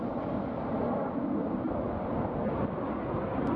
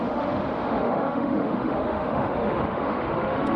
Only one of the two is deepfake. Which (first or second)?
second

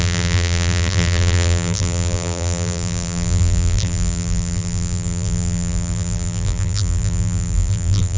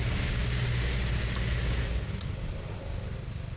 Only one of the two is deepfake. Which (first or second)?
first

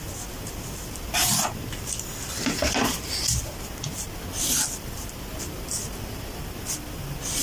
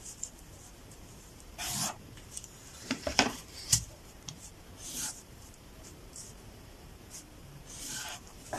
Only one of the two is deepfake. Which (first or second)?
second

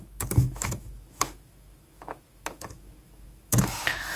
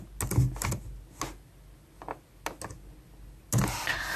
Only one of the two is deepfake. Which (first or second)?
first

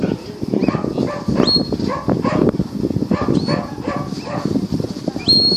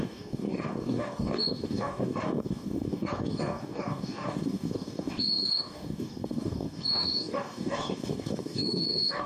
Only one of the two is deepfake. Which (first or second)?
second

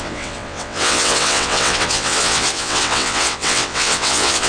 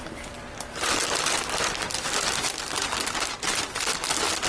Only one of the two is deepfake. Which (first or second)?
first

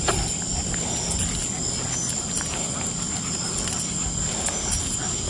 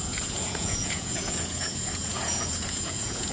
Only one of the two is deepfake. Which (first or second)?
second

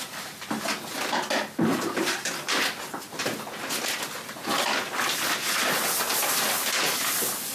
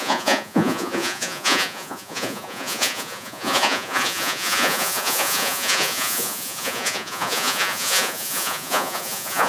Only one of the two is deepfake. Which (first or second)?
second